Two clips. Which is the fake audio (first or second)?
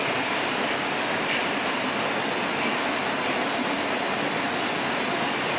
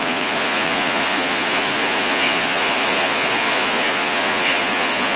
second